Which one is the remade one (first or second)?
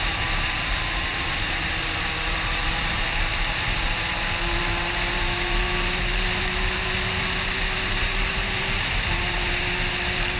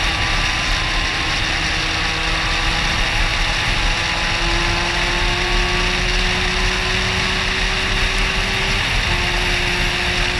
first